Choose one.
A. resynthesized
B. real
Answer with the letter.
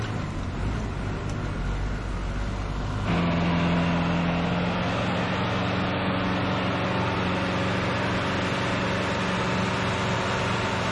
B